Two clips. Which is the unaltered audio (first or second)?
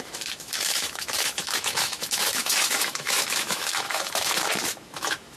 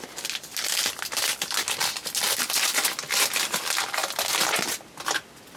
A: second